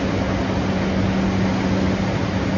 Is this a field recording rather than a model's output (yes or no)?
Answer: yes